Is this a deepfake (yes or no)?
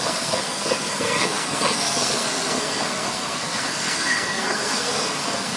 yes